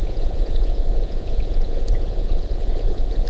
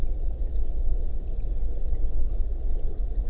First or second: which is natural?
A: second